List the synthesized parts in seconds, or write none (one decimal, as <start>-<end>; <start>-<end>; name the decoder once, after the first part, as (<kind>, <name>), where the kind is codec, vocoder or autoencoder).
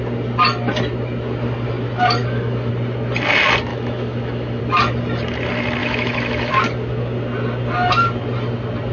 2.2-2.7 (autoencoder, DAC-VAE); 3.7-4.6; 5.8-6.5